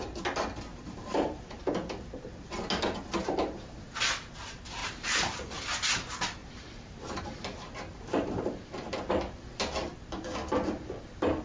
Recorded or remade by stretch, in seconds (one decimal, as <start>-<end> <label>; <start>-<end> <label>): 0.0-0.7 recorded; 0.7-1.6 remade; 1.6-4.8 recorded; 4.8-5.6 remade; 5.6-6.4 recorded; 6.4-7.2 remade; 7.2-7.9 recorded; 7.9-8.9 remade; 8.9-11.4 recorded